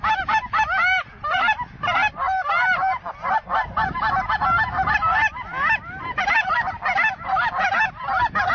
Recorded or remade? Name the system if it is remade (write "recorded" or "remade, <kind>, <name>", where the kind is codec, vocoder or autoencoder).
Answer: recorded